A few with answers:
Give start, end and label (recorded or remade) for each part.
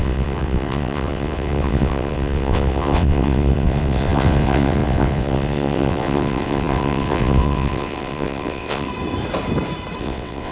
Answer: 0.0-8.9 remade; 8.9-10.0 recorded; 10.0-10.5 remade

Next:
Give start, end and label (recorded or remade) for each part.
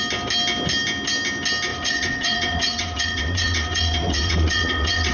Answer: 0.0-1.7 recorded; 1.7-5.1 remade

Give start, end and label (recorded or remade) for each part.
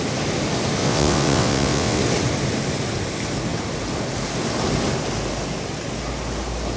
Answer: 0.0-0.8 recorded; 0.8-2.0 remade; 2.0-6.8 recorded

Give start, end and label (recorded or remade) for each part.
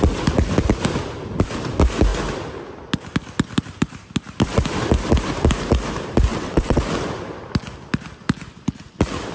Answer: 0.0-6.3 recorded; 6.3-6.8 remade; 6.8-9.3 recorded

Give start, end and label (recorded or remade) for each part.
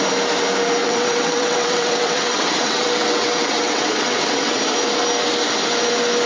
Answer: 0.0-0.8 recorded; 0.8-4.6 remade; 4.6-6.3 recorded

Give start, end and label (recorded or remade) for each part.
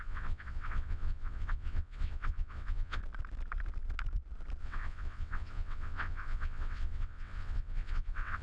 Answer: 0.0-3.0 remade; 3.0-4.6 recorded; 4.6-8.4 remade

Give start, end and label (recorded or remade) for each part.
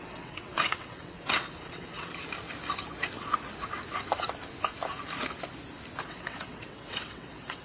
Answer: 0.0-2.1 remade; 2.1-6.0 recorded; 6.0-7.6 remade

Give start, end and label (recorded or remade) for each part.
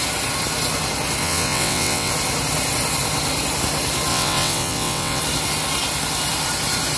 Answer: 0.0-1.2 recorded; 1.2-2.1 remade; 2.1-4.1 recorded; 4.1-5.2 remade; 5.2-7.0 recorded